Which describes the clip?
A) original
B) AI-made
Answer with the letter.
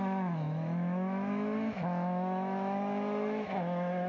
B